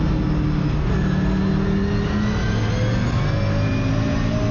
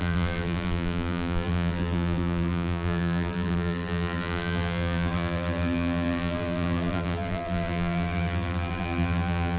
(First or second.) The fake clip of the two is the second